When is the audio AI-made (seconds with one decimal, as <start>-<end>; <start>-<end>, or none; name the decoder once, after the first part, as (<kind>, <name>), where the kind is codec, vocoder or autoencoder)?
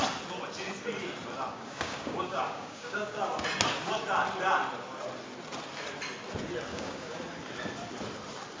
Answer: 1.5-3.2 (codec, DAC); 6.7-7.2